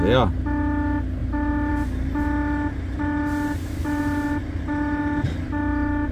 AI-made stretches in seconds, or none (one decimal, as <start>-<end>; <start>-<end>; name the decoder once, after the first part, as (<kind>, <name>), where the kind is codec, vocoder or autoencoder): 3.8-4.4 (vocoder, BigVGAN v2)